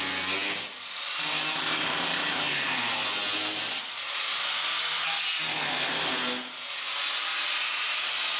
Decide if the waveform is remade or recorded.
recorded